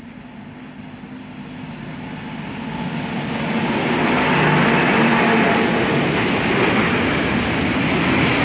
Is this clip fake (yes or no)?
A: no